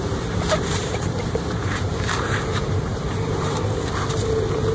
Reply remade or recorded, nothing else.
remade